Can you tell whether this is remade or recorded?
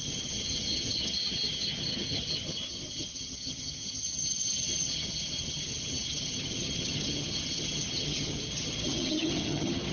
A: remade